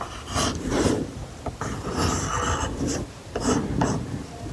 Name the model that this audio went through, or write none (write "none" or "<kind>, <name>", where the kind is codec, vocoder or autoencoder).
vocoder, BigVGAN v2